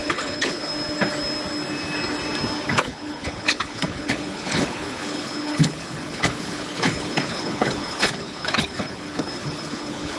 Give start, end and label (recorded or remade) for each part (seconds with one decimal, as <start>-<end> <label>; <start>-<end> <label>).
0.0-0.7 remade; 0.7-2.7 recorded; 2.7-10.2 remade